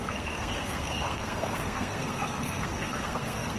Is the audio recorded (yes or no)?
no